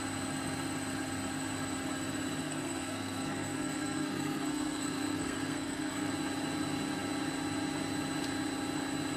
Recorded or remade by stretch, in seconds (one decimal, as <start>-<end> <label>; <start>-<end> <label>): 0.0-2.4 recorded; 2.4-6.1 remade; 6.1-9.2 recorded